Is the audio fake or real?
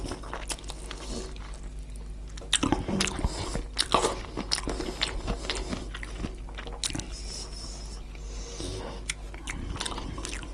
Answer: real